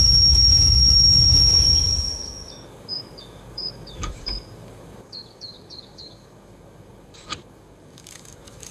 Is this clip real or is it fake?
fake